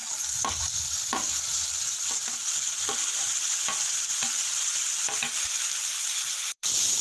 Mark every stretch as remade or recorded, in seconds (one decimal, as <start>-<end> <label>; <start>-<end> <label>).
0.0-0.5 recorded; 0.5-4.5 remade; 4.5-5.5 recorded; 5.5-7.0 remade